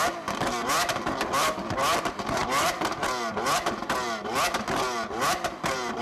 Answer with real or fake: real